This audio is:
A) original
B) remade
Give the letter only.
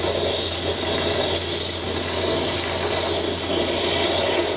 A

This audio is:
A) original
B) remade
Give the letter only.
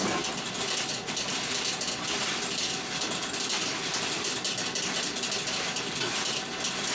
A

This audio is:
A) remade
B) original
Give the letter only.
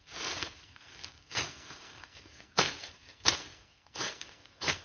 A